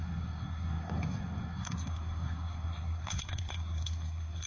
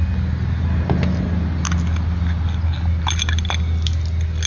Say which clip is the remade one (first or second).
first